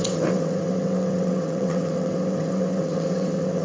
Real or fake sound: fake